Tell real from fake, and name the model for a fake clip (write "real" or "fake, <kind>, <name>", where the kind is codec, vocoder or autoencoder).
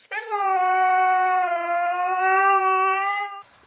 fake, vocoder, BigVGAN v2